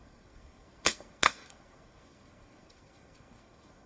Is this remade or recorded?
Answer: remade